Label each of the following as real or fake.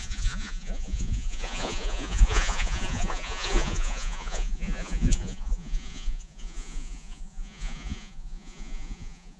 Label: fake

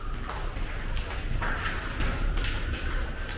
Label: real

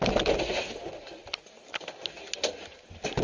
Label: real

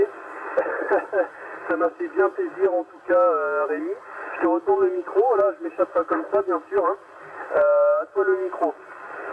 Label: real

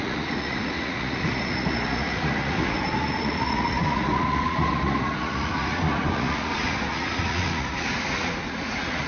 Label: fake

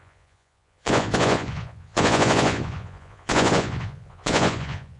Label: fake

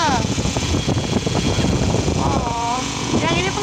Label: fake